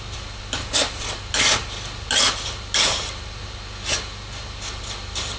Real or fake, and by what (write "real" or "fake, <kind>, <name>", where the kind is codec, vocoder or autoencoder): real